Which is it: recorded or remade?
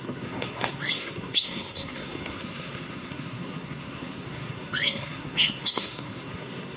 remade